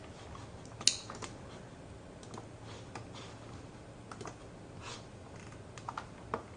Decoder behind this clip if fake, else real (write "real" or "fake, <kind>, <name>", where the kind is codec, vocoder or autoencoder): real